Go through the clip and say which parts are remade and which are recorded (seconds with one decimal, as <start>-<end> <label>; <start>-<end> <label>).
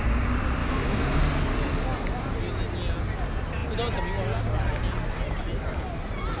0.0-0.6 recorded; 0.6-1.2 remade; 1.2-6.4 recorded